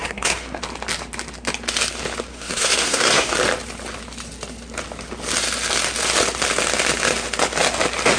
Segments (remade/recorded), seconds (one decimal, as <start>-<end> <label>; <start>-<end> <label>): 0.0-0.6 remade; 0.6-2.3 recorded; 2.3-3.3 remade; 3.3-8.2 recorded